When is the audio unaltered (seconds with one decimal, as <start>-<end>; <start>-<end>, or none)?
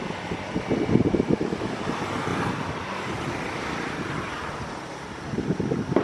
0.0-6.0